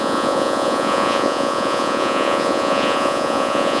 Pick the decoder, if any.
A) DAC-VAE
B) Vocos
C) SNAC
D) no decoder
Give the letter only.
B